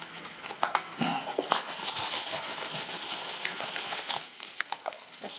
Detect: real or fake fake